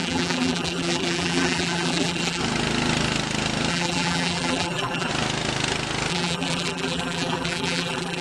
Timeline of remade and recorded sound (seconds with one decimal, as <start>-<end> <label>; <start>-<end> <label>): 0.0-2.4 remade; 2.4-3.7 recorded; 3.7-5.1 remade; 5.1-6.1 recorded; 6.1-8.2 remade